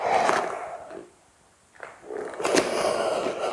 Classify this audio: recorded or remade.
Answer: recorded